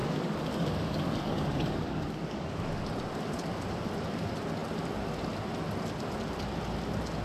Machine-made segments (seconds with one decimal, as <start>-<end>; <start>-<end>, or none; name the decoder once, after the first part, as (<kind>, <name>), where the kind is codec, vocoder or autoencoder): 0.0-2.8 (codec, DAC)